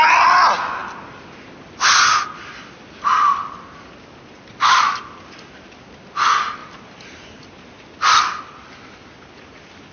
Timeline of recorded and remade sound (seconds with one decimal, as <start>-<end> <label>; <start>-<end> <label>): 0.0-9.9 recorded

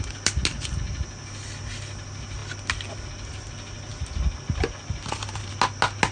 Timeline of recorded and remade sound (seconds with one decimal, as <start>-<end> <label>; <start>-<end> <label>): 0.0-6.1 recorded

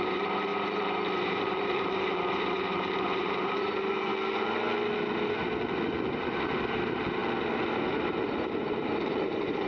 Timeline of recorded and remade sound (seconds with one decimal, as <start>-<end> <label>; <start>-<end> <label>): 0.0-4.1 remade; 4.1-6.1 recorded; 6.1-7.2 remade; 7.2-8.0 recorded; 8.0-9.7 remade

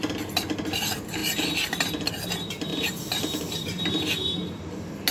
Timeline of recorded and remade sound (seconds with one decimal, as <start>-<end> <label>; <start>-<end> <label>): 0.0-2.7 recorded; 2.7-4.0 remade; 4.0-5.1 recorded

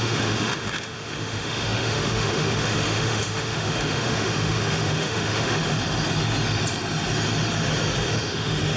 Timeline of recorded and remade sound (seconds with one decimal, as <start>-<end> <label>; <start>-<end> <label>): 0.0-5.6 remade; 5.6-8.1 recorded; 8.1-8.8 remade

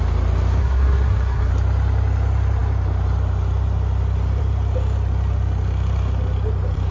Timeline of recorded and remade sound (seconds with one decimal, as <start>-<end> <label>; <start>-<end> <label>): 0.0-0.6 recorded; 0.6-1.5 remade; 1.5-6.9 recorded